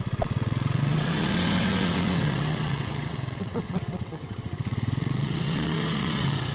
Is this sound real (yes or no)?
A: no